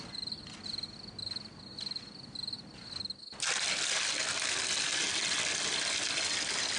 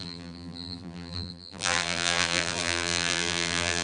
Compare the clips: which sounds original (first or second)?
first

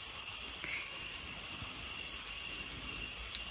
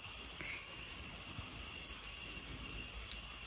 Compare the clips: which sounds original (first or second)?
second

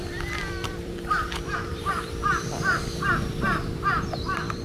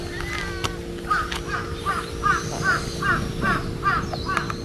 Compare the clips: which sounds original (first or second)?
second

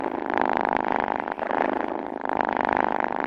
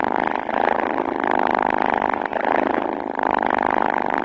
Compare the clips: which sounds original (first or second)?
second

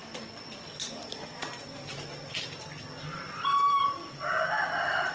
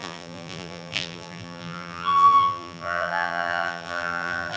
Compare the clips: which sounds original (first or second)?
first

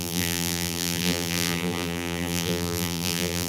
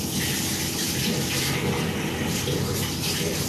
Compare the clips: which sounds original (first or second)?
second